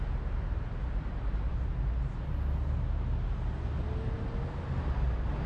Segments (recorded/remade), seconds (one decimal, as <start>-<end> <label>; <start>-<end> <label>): 0.0-5.5 recorded